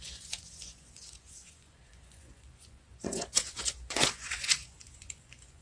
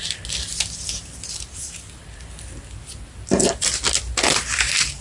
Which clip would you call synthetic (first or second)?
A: first